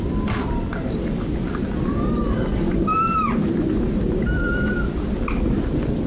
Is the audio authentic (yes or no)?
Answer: yes